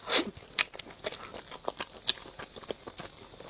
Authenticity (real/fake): real